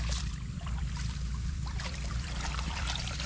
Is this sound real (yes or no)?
no